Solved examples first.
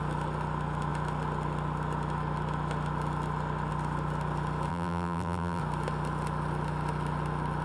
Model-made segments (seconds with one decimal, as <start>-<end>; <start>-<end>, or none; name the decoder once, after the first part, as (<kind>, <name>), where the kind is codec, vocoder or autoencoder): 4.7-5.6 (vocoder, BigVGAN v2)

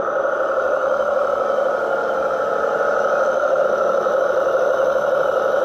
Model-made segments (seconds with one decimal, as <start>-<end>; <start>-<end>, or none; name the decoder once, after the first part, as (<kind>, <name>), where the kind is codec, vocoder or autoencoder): none

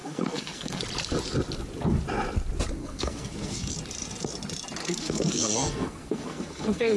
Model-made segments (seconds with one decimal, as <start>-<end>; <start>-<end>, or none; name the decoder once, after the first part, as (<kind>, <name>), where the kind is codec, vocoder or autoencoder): 0.0-0.8 (codec, SNAC); 2.8-3.7; 4.8-7.0